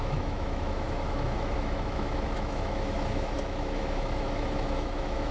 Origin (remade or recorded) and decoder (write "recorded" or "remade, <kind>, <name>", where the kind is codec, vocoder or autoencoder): remade, autoencoder, DAC-VAE